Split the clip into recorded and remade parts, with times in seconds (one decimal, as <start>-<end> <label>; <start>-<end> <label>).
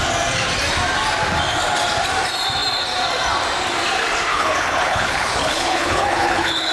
0.0-4.3 recorded; 4.3-6.7 remade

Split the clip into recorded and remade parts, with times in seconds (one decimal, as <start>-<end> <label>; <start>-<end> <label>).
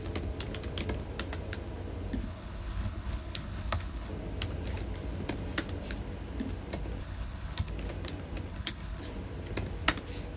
0.0-2.2 recorded; 2.2-4.1 remade; 4.1-7.0 recorded; 7.0-7.7 remade; 7.7-8.5 recorded; 8.5-9.0 remade; 9.0-10.4 recorded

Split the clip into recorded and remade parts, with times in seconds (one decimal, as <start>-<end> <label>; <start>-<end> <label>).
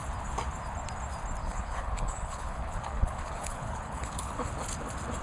0.0-1.4 recorded; 1.4-4.5 remade; 4.5-5.2 recorded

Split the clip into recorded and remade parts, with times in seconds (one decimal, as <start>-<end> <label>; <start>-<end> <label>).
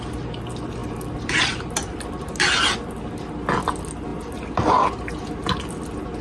0.0-6.2 recorded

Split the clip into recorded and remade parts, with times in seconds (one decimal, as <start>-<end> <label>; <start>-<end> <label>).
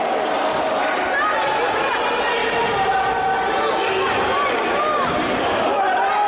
0.0-6.3 recorded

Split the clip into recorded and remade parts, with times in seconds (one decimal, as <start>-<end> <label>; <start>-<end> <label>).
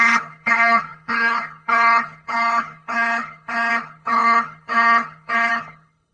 0.0-6.1 remade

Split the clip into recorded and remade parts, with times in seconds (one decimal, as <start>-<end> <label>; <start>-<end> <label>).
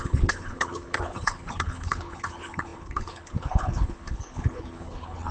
0.0-5.3 remade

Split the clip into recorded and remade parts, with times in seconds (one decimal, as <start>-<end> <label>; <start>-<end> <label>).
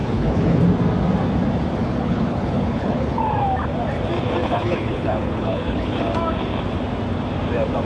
0.0-0.6 remade; 0.6-1.8 recorded; 1.8-3.2 remade; 3.2-4.4 recorded; 4.4-6.0 remade; 6.0-7.8 recorded